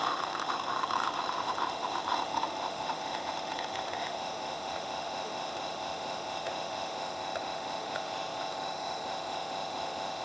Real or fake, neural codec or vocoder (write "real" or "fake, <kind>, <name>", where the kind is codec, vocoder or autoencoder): fake, autoencoder, DAC-VAE